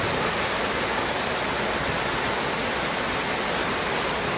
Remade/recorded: recorded